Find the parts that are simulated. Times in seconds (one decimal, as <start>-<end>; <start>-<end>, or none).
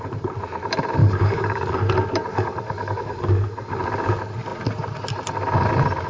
1.0-1.7; 2.3-3.8